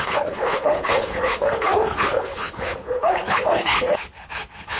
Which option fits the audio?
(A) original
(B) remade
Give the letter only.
B